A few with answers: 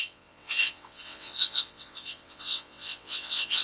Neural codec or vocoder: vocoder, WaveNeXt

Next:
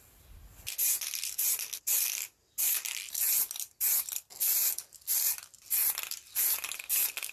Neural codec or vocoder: none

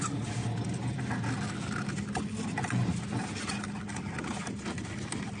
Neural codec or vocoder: none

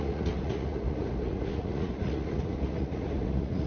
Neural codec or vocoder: vocoder, Vocos